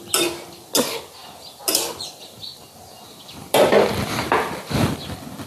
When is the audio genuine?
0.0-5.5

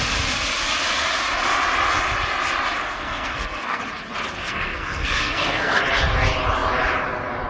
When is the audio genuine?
0.0-2.8; 3.8-4.4; 5.8-7.5

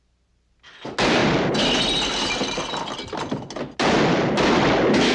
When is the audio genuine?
0.0-5.1

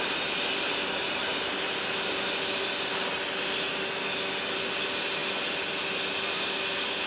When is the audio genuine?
0.0-7.1

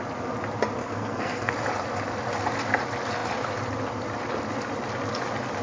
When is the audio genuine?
0.0-0.8; 1.5-5.6

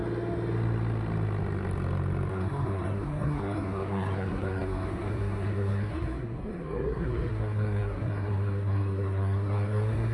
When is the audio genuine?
0.0-2.3

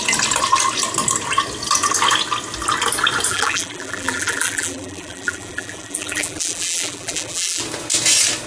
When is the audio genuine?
0.0-3.3; 7.6-8.5

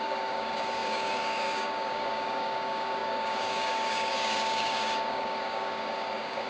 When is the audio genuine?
none